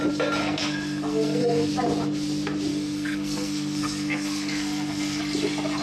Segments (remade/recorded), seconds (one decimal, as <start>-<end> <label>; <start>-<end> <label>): 0.0-0.4 recorded; 0.4-1.7 remade; 1.7-2.7 recorded; 2.7-5.2 remade; 5.2-5.8 recorded